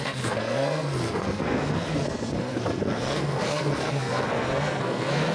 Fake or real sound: fake